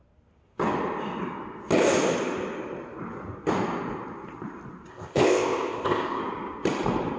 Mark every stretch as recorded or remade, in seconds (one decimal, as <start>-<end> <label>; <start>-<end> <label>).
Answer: 0.0-4.9 recorded; 4.9-6.2 remade; 6.2-7.2 recorded